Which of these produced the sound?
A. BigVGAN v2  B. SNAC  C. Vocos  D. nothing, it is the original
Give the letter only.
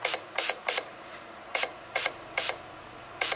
C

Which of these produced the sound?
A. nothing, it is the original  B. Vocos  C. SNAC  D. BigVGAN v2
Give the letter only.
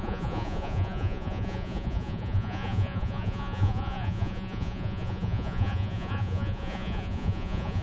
B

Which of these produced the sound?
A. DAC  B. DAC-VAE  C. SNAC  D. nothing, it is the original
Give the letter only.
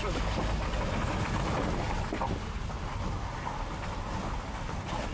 D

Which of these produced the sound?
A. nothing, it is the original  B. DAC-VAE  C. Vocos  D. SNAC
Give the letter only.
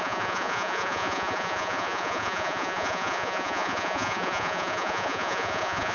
C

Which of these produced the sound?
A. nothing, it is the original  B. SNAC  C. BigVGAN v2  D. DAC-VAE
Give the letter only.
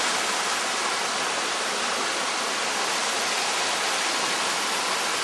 A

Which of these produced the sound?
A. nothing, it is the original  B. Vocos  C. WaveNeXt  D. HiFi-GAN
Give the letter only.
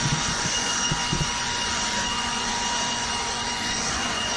B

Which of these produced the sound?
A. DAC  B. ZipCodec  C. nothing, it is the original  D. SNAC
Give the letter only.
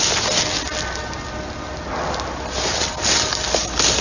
C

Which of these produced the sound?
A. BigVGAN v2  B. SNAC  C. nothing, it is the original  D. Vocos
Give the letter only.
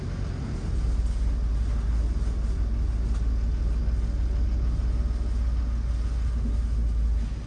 C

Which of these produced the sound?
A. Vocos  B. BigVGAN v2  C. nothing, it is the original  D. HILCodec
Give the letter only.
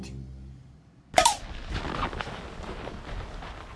C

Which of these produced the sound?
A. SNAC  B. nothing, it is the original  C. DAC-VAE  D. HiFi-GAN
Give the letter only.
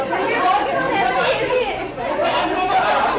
B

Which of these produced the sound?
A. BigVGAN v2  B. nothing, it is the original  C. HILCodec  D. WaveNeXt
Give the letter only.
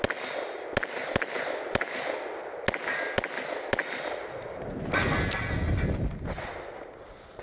B